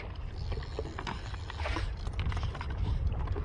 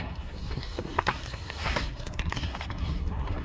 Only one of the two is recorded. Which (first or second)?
first